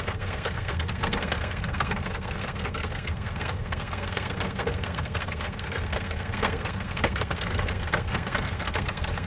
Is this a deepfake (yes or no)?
yes